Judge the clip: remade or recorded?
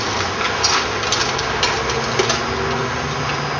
recorded